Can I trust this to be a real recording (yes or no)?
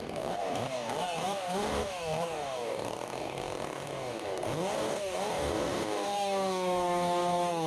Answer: no